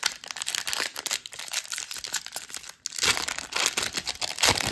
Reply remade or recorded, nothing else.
recorded